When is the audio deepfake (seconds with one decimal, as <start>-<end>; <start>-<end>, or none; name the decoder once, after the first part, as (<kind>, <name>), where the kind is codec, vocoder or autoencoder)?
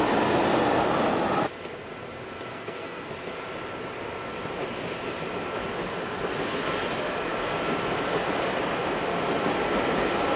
2.5-3.1 (codec, SNAC)